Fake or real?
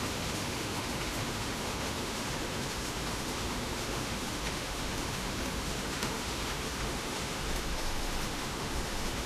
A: fake